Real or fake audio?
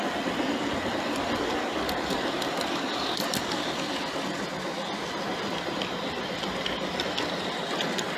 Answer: real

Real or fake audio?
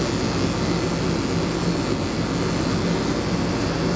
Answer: real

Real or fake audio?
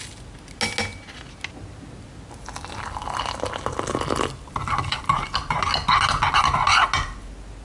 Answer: real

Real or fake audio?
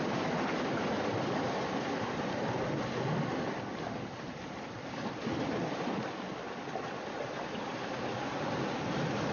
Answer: fake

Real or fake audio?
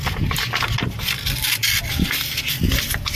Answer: real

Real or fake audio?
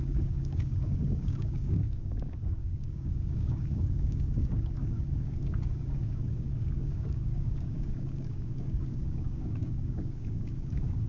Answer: fake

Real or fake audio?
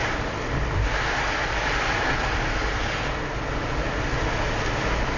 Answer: real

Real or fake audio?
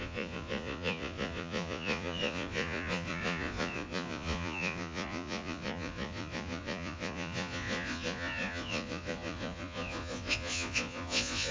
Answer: fake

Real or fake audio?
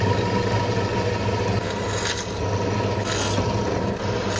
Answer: real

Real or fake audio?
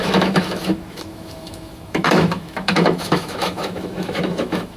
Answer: fake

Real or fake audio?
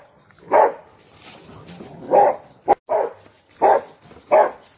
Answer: real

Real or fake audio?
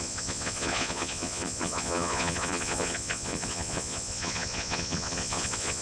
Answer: fake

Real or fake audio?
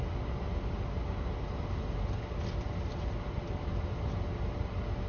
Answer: real